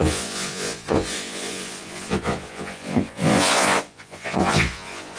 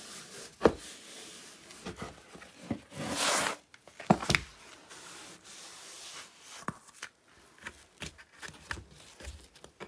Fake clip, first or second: first